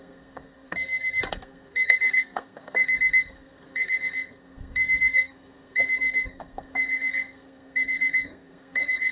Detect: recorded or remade remade